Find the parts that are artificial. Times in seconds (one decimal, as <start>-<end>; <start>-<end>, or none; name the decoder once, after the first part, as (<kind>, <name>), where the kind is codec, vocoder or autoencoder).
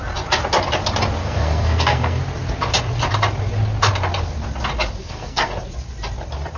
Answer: 1.2-2.2 (codec, SNAC); 5.0-5.5